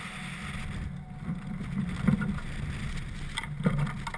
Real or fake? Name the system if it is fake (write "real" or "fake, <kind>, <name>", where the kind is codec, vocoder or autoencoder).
real